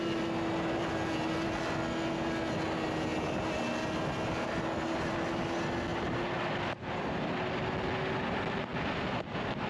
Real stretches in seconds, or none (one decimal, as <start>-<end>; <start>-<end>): 0.0-5.9; 6.4-9.7